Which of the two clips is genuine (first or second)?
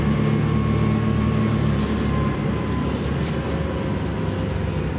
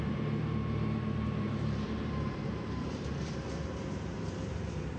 first